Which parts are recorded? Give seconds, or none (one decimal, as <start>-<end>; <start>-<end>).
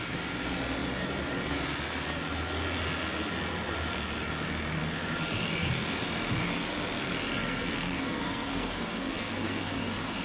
0.0-7.4; 9.7-10.2